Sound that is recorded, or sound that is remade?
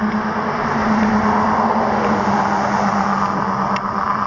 recorded